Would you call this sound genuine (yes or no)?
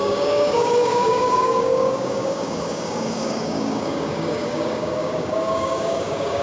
no